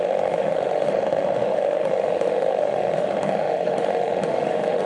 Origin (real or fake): fake